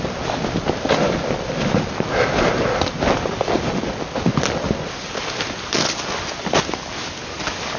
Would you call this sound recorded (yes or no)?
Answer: yes